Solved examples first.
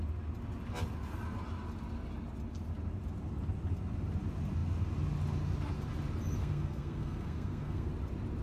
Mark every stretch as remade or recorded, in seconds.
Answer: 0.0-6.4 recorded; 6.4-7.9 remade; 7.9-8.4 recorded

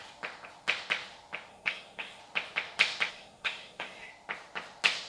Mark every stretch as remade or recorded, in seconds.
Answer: 0.0-1.5 recorded; 1.5-2.2 remade; 2.2-3.1 recorded; 3.1-4.1 remade; 4.1-5.1 recorded

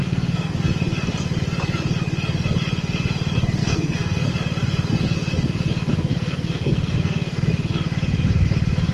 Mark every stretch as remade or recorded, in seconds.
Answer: 0.0-0.5 remade; 0.5-3.6 recorded; 3.6-4.3 remade; 4.3-6.1 recorded; 6.1-7.4 remade; 7.4-8.9 recorded